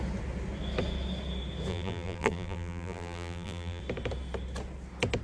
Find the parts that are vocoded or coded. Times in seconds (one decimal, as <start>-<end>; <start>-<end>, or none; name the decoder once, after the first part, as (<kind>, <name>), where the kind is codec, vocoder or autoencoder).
1.7-3.8 (vocoder, BigVGAN v2)